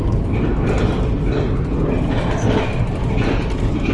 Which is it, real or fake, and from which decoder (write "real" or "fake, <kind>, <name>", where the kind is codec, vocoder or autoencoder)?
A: real